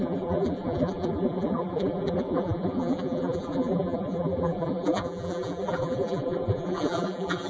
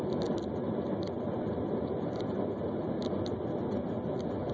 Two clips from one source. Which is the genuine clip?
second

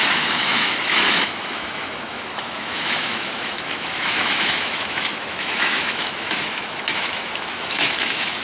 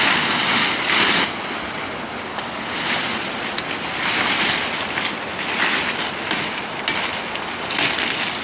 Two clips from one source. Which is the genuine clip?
second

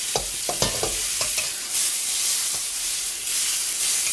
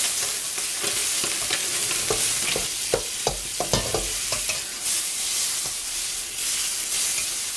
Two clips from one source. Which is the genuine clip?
second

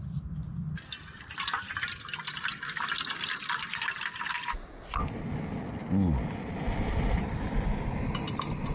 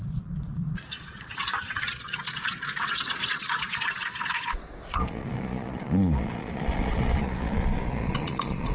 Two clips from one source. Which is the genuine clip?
first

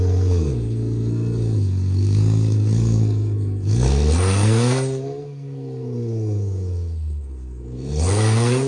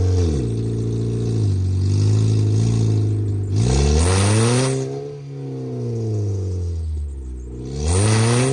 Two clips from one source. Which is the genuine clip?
second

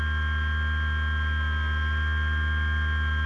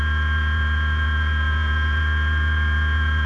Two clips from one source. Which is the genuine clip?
first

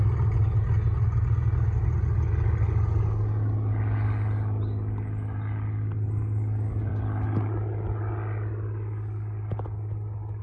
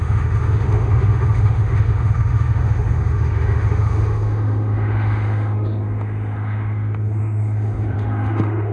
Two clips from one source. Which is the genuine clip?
first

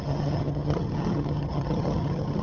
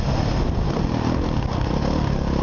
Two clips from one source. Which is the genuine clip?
second